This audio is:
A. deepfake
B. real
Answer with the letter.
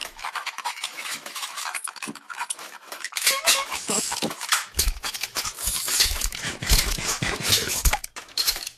A